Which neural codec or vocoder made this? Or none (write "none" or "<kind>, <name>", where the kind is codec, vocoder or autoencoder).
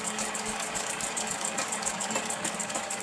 codec, DAC